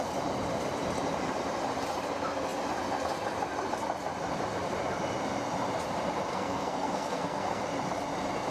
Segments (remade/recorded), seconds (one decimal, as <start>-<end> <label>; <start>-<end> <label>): 0.0-6.3 recorded; 6.3-7.6 remade; 7.6-8.5 recorded